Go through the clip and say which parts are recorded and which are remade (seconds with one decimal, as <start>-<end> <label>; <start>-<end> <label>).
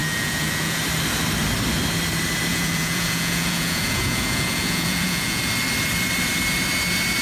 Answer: 0.0-0.8 remade; 0.8-2.5 recorded; 2.5-5.4 remade; 5.4-7.2 recorded